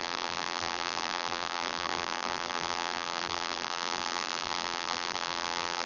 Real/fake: fake